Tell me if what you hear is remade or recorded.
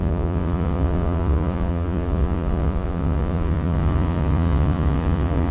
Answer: remade